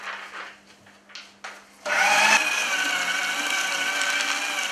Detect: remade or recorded recorded